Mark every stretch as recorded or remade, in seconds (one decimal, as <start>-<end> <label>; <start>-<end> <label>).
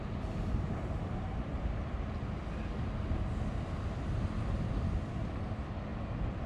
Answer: 0.0-1.5 remade; 1.5-5.4 recorded; 5.4-5.9 remade; 5.9-6.5 recorded